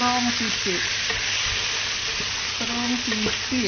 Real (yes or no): yes